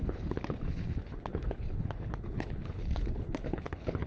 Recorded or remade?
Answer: remade